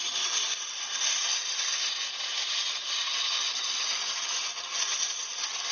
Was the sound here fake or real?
real